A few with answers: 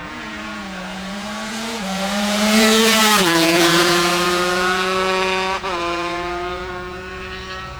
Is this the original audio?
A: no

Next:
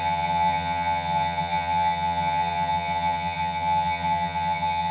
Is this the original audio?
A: no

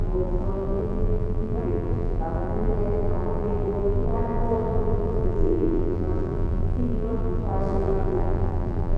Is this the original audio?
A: no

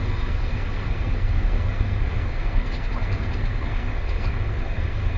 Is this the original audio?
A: no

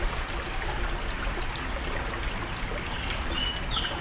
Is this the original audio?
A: yes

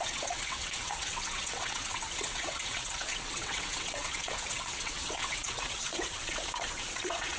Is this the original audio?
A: no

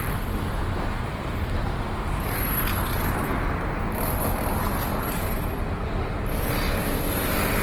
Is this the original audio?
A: yes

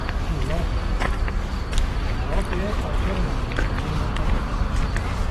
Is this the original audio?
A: yes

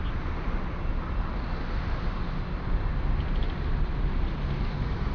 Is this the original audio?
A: yes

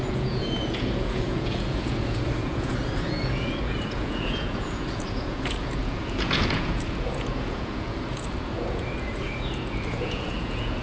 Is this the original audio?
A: no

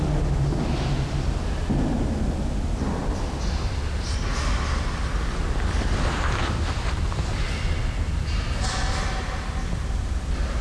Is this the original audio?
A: yes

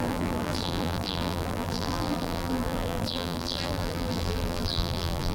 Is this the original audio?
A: no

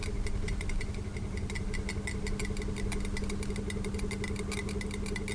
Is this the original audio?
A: yes